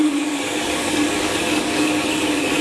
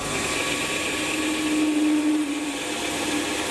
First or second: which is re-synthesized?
first